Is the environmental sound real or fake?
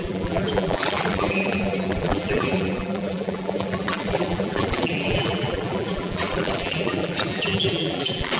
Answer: fake